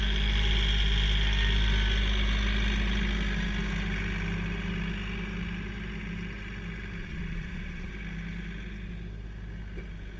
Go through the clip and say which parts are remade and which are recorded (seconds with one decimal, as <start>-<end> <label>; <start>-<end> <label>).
0.0-7.0 recorded; 7.0-7.9 remade; 7.9-10.2 recorded